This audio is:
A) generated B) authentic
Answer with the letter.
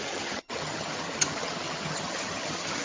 A